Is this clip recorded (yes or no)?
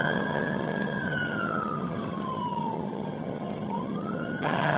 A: no